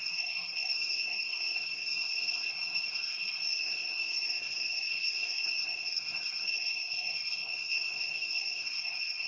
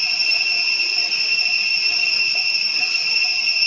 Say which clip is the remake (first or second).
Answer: first